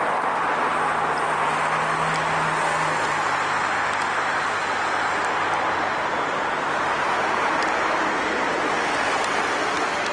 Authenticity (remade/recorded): recorded